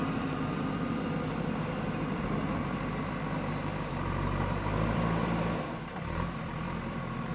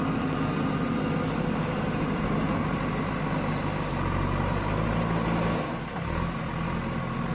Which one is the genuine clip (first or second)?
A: second